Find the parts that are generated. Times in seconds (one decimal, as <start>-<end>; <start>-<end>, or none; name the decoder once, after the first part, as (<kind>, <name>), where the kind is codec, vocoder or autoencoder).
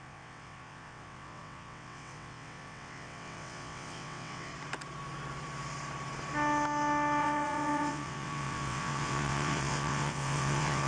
0.0-4.5 (vocoder, WaveNeXt); 7.2-10.9